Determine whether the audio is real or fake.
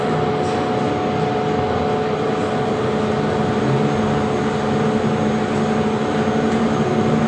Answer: real